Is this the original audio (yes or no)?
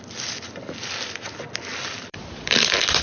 no